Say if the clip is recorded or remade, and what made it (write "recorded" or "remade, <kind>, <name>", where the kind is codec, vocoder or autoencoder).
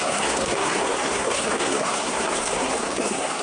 remade, codec, SNAC